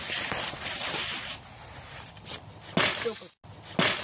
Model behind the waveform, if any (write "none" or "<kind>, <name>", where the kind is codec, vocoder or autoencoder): none